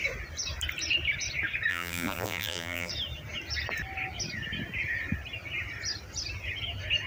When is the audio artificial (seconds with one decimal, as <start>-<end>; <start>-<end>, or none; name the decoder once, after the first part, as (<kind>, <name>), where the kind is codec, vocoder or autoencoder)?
1.7-2.9 (vocoder, BigVGAN v2)